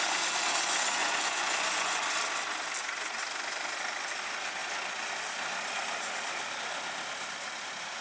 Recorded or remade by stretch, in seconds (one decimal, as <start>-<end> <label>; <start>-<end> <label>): 0.0-1.0 recorded; 1.0-2.1 remade; 2.1-8.0 recorded